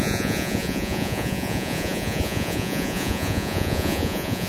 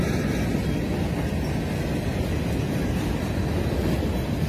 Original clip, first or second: second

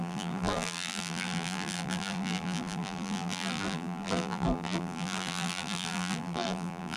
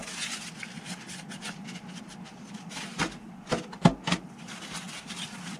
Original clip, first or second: second